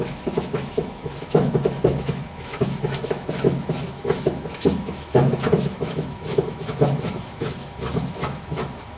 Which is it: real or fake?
fake